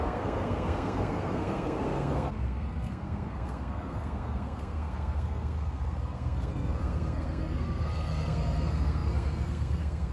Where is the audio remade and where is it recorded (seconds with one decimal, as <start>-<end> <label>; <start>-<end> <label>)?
0.0-10.1 remade